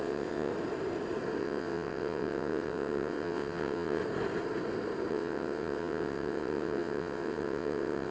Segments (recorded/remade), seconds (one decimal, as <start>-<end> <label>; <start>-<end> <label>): 0.0-0.5 remade; 0.5-1.4 recorded; 1.4-4.0 remade; 4.0-5.1 recorded; 5.1-8.1 remade